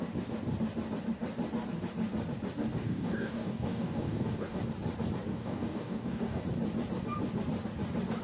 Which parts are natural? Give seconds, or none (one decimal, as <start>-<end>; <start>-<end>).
0.0-2.8; 4.6-5.3; 6.4-8.2